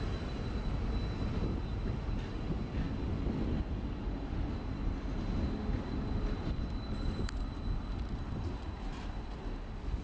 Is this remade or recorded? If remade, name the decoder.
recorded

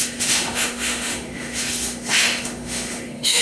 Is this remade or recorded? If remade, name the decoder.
remade, autoencoder, DAC-VAE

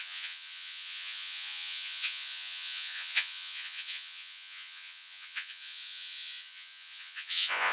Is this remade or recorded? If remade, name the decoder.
remade, vocoder, Vocos